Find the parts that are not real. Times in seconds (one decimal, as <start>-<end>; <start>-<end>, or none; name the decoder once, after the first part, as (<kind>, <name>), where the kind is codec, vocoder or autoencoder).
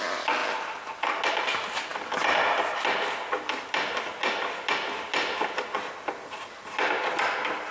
none